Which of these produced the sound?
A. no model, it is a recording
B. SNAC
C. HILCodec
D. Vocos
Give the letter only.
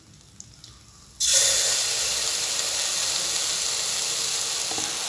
A